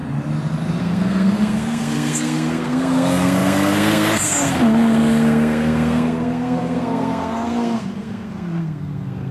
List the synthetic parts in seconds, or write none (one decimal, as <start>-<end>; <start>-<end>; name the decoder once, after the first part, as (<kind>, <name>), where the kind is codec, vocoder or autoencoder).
0.8-9.3 (codec, SNAC)